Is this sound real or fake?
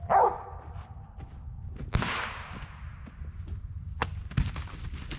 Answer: real